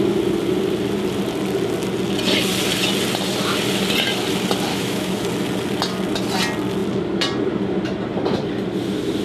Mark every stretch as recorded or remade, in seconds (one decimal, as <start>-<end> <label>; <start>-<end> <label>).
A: 0.0-4.7 recorded; 4.7-5.2 remade; 5.2-9.2 recorded